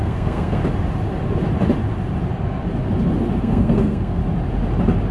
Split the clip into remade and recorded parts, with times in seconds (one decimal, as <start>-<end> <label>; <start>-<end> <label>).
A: 0.0-0.6 remade; 0.6-3.4 recorded; 3.4-4.2 remade; 4.2-5.1 recorded